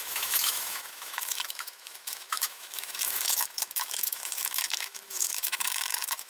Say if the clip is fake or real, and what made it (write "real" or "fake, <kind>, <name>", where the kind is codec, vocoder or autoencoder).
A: fake, autoencoder, DAC-VAE